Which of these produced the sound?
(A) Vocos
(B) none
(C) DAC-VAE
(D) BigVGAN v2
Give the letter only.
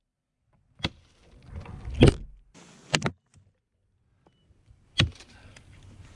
B